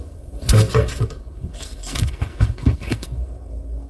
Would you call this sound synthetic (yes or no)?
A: yes